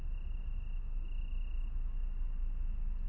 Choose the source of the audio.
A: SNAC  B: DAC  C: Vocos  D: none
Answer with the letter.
D